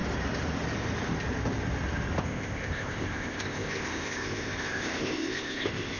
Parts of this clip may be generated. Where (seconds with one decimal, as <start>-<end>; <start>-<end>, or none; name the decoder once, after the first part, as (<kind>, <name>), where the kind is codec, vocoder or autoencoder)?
2.2-6.0 (codec, ZipCodec)